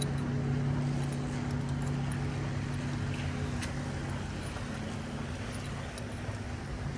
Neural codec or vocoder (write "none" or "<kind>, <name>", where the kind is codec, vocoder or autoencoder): none